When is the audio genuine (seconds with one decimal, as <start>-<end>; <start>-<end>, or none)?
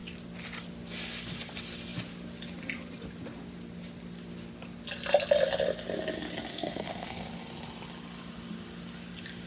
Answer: 0.0-6.5; 7.2-9.5